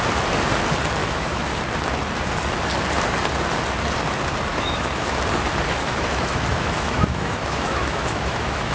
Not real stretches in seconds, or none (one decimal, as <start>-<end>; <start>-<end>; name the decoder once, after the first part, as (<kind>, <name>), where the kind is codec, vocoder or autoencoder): 1.0-1.6 (autoencoder, DAC-VAE); 4.5-5.1; 5.7-8.7